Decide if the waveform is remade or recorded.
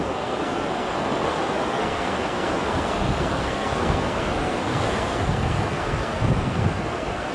remade